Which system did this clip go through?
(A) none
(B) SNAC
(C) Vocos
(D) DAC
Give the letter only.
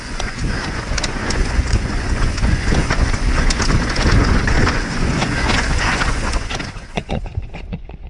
C